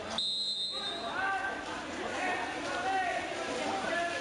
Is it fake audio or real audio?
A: real